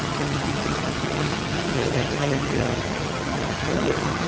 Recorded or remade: remade